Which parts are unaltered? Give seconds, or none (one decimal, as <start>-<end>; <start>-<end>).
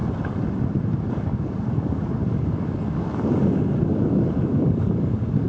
0.0-1.1